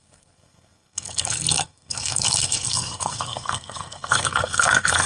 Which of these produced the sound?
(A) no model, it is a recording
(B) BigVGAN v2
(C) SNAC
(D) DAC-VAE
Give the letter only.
C